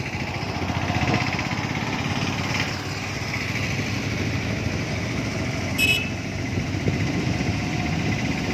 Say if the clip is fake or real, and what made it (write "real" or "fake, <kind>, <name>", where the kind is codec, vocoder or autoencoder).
real